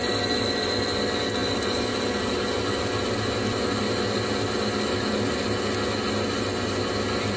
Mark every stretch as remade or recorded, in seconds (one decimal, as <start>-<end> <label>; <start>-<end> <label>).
0.0-7.4 recorded